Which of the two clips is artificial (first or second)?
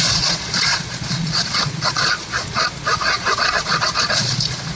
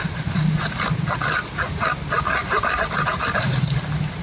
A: first